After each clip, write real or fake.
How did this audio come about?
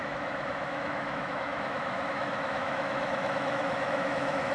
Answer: fake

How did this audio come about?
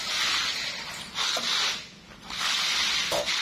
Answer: real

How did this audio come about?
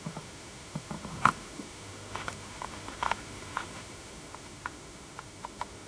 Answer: fake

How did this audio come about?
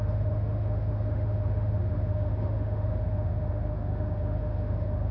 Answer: fake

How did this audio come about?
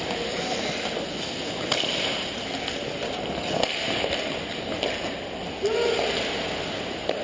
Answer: real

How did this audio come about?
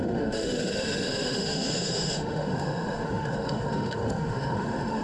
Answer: fake